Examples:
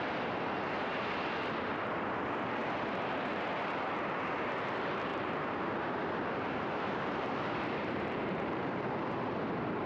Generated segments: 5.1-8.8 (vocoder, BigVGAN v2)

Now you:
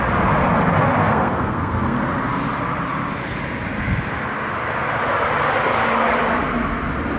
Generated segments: 1.0-2.0 (codec, SNAC)

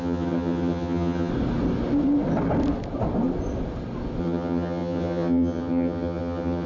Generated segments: 0.0-1.3 (vocoder, HiFi-GAN); 4.2-6.7

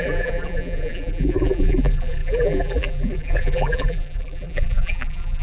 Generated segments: 0.0-5.4 (vocoder, BigVGAN v2)

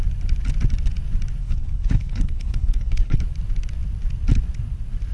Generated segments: 1.4-3.2 (codec, HILCodec)

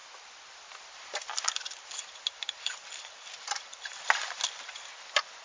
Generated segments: 2.0-3.9 (vocoder, BigVGAN v2)

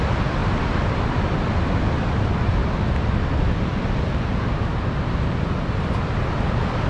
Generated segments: none